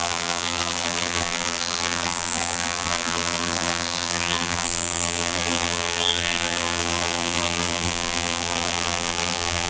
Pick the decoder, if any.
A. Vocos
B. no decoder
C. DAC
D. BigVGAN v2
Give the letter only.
D